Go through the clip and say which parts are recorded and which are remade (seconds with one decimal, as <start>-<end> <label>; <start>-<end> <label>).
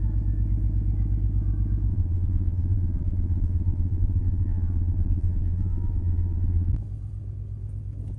0.0-1.9 recorded; 1.9-6.8 remade; 6.8-8.2 recorded